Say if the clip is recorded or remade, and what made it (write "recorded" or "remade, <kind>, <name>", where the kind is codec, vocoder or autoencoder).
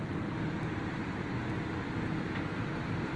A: recorded